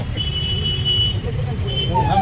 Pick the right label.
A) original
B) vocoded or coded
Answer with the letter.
B